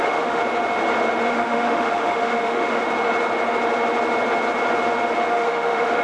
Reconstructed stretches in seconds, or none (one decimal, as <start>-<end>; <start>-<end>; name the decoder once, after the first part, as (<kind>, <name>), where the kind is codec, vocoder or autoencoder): 0.0-0.4 (autoencoder, DAC-VAE); 1.3-2.8; 5.3-6.0